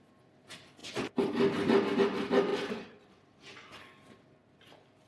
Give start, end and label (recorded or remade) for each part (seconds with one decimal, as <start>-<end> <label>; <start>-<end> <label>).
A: 0.0-5.1 recorded